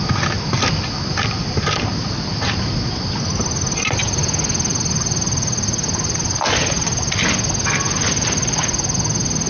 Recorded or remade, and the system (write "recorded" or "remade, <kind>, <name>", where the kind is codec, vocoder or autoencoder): recorded